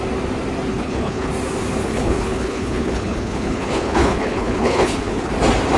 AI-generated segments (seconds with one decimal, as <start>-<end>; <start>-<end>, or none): 0.7-1.3; 1.8-5.3